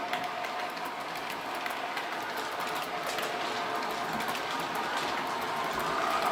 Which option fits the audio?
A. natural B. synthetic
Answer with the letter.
A